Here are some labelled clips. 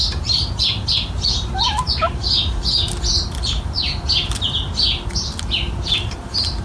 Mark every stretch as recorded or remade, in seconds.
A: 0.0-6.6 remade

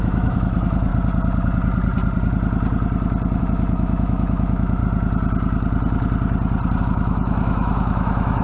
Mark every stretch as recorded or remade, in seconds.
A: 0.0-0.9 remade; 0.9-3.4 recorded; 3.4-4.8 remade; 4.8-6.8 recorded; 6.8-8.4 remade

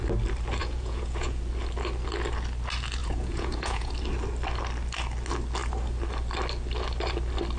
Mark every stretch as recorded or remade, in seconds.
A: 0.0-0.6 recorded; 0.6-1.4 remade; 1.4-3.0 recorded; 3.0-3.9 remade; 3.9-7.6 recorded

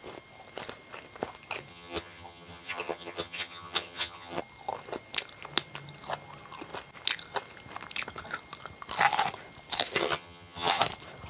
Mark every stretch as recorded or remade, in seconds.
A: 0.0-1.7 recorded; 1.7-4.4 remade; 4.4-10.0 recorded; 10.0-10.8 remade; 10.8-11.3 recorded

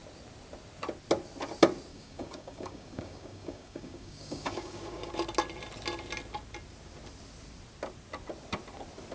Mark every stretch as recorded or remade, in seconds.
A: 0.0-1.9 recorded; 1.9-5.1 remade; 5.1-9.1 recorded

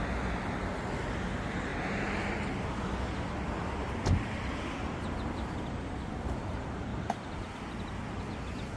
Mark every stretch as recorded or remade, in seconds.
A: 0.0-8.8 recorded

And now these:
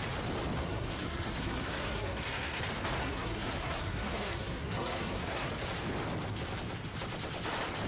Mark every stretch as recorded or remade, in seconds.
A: 0.0-0.6 recorded; 0.6-2.6 remade; 2.6-3.0 recorded; 3.0-5.5 remade; 5.5-7.9 recorded